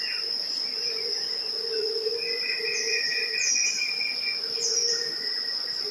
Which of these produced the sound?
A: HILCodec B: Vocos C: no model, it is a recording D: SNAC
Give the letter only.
B